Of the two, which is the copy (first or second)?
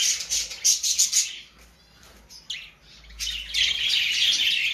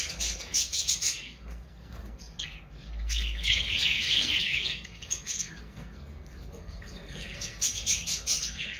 second